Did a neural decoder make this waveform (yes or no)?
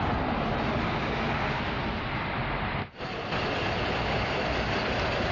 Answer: no